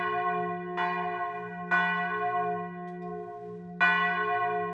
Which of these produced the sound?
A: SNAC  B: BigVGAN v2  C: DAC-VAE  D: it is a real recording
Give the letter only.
D